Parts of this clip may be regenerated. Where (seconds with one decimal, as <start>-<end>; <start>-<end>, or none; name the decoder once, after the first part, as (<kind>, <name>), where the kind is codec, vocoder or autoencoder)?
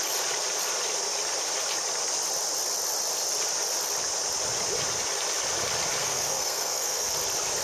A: 6.0-7.1 (codec, SNAC)